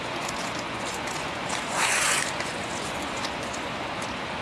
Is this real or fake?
fake